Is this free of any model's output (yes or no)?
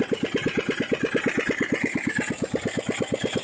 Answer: yes